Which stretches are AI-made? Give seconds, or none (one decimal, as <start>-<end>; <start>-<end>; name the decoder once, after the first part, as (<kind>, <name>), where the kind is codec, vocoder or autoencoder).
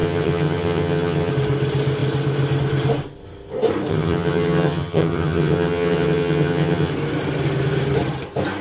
0.0-1.3 (vocoder, HiFi-GAN); 3.9-6.9